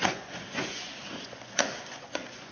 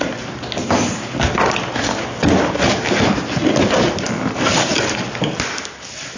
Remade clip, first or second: first